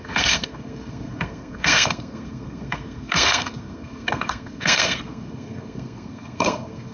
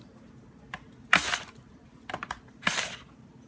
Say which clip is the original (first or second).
second